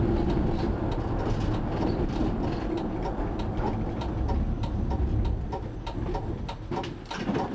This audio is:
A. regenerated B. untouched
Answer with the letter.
B